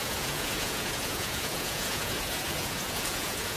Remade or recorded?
remade